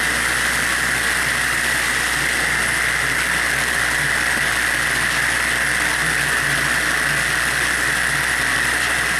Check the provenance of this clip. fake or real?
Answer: real